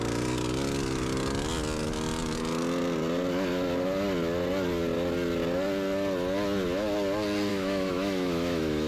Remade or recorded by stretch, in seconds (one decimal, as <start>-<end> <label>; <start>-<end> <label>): 0.0-7.5 recorded; 7.5-8.9 remade